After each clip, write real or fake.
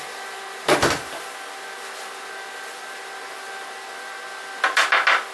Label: real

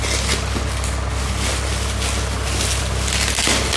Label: real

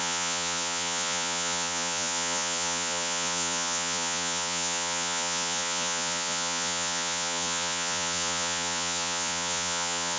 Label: fake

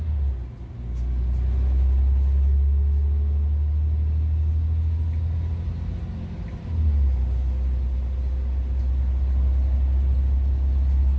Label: real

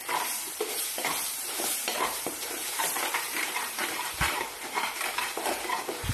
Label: fake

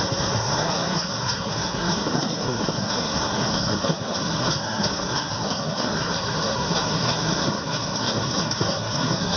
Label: fake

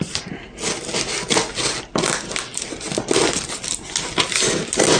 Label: real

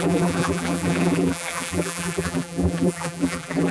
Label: fake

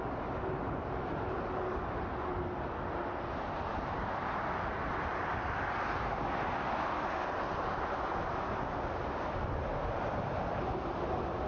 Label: real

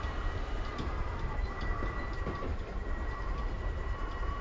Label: fake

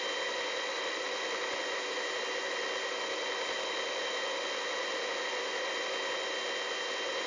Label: real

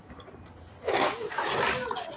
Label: real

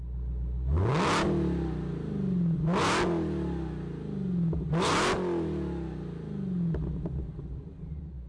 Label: real